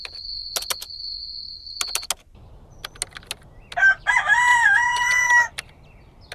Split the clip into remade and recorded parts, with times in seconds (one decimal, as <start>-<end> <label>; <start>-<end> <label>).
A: 0.0-4.5 recorded; 4.5-5.3 remade; 5.3-6.3 recorded